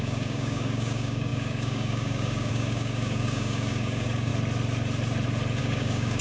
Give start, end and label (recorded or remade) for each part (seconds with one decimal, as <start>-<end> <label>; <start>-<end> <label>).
0.0-4.3 remade; 4.3-5.6 recorded; 5.6-6.2 remade